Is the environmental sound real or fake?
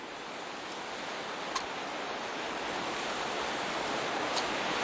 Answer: real